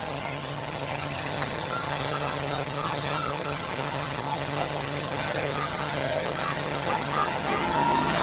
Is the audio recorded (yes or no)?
no